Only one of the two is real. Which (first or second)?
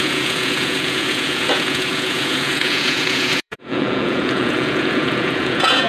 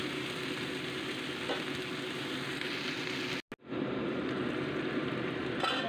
second